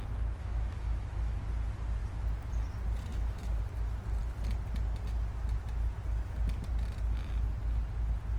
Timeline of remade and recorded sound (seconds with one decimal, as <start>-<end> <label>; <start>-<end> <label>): 0.0-0.4 recorded; 0.4-1.4 remade; 1.4-3.1 recorded; 3.1-3.6 remade; 3.6-8.4 recorded